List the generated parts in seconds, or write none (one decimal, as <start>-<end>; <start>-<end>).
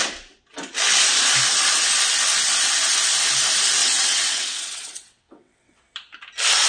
3.8-5.8